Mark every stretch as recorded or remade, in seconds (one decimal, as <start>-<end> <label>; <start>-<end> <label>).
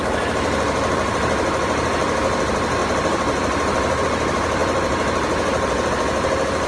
0.0-6.7 recorded